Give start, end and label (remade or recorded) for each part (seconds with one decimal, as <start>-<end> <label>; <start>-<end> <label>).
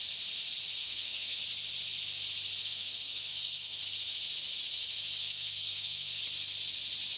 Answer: 0.0-0.8 recorded; 0.8-1.4 remade; 1.4-2.6 recorded; 2.6-3.8 remade; 3.8-5.2 recorded; 5.2-6.2 remade; 6.2-7.2 recorded